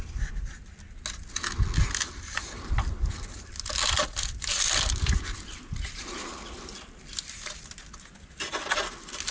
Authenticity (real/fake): real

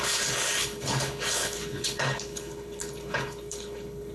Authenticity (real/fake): fake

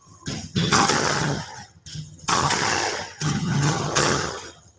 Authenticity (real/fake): fake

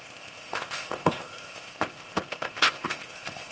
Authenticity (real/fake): fake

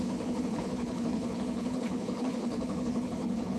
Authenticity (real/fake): fake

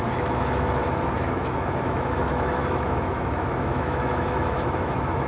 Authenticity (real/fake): fake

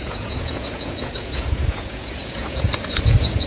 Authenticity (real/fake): fake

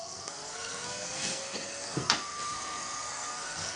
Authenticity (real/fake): fake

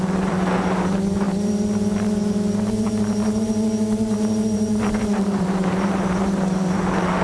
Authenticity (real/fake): fake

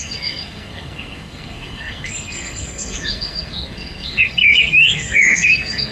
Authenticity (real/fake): fake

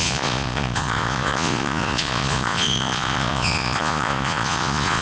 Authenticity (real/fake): fake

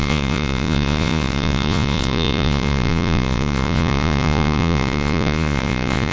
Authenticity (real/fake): fake